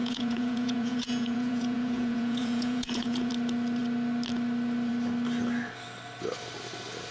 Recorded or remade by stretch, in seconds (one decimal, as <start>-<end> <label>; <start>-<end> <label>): 0.0-3.3 remade; 3.3-7.1 recorded